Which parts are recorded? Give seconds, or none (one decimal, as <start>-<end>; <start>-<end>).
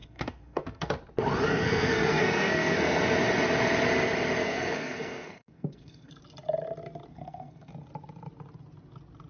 0.9-1.5; 3.0-4.4; 6.1-7.1; 7.7-9.3